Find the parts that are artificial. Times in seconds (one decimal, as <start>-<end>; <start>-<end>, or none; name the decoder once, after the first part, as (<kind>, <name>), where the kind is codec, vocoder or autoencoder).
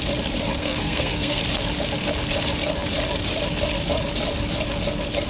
0.6-1.4 (codec, SNAC)